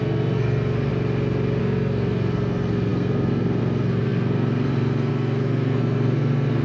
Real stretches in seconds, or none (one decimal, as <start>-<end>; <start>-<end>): 0.9-1.6